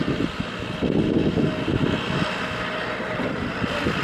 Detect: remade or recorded recorded